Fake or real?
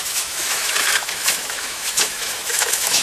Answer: fake